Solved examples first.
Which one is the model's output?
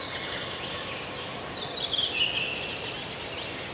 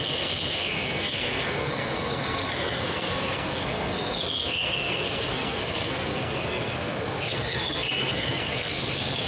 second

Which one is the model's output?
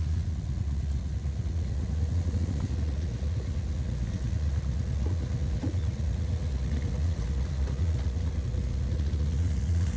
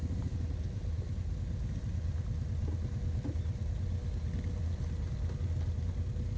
first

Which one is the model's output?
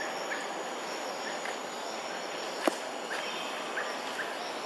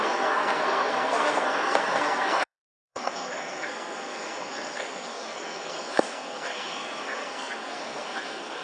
second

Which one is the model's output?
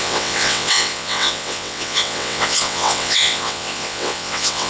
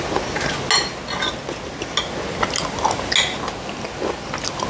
first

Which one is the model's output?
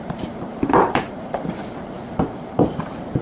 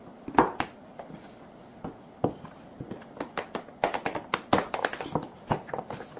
first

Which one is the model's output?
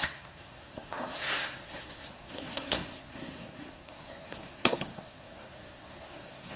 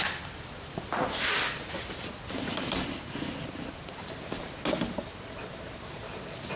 first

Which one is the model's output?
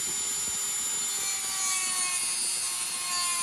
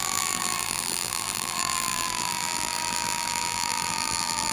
second